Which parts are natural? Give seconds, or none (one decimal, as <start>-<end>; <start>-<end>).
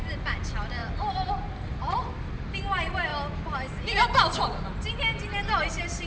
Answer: 0.0-6.1